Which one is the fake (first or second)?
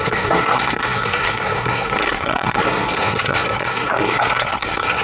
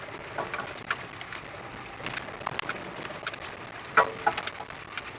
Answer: first